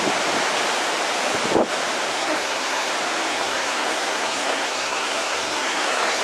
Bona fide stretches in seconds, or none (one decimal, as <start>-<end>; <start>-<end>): 0.0-2.1; 2.9-3.3